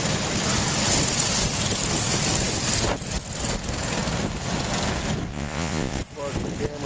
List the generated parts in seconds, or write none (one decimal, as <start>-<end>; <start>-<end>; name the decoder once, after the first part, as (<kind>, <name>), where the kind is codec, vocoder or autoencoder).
5.3-6.0 (vocoder, Vocos)